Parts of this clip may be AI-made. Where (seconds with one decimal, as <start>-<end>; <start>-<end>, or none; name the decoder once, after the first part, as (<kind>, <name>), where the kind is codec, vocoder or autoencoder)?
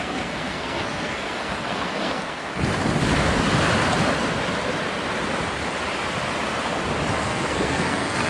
0.0-2.5 (codec, SNAC); 7.1-8.3